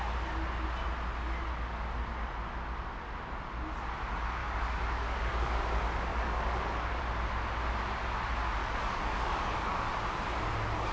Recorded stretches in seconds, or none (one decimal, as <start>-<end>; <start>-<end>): 0.0-4.4; 5.6-6.1; 7.0-8.6; 9.9-10.9